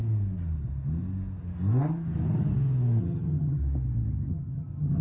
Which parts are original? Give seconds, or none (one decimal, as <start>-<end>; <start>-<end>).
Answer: 0.0-3.0; 3.6-4.3